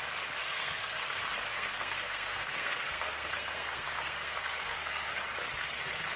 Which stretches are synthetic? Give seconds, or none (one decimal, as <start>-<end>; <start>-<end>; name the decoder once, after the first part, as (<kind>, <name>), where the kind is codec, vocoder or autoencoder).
0.4-1.0 (codec, SNAC); 1.5-5.2